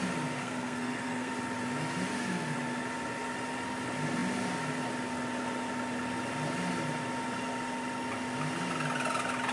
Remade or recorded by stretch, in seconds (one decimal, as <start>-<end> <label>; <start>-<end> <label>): 0.0-0.4 recorded; 0.4-1.3 remade; 1.3-9.5 recorded